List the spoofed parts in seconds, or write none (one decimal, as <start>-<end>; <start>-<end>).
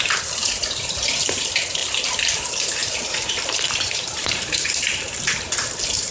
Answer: 0.0-6.1